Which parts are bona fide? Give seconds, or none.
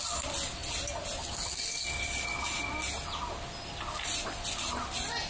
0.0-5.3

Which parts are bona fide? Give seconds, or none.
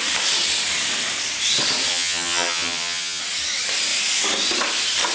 0.0-1.9; 3.2-5.1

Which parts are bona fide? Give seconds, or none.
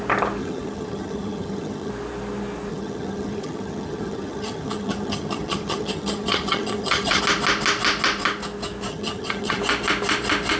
0.0-0.4; 1.9-2.7; 7.2-8.9; 9.6-10.6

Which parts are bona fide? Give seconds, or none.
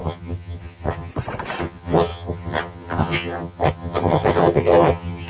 1.1-1.6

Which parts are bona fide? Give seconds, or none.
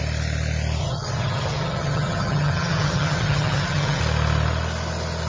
0.0-0.8; 4.0-5.3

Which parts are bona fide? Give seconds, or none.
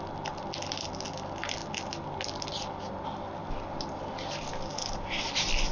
0.0-5.7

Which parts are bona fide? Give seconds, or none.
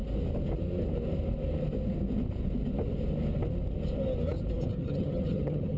0.0-4.7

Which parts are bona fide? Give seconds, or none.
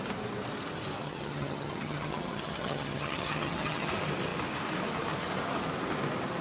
0.0-1.0; 3.9-6.4